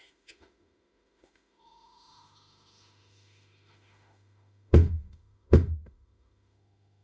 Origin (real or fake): fake